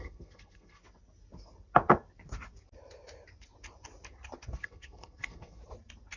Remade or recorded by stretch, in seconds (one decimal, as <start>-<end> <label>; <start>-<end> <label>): 0.0-0.8 remade; 0.8-4.5 recorded; 4.5-5.6 remade; 5.6-6.2 recorded